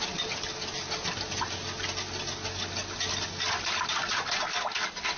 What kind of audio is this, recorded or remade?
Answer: recorded